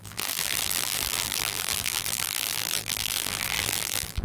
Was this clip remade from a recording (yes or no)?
yes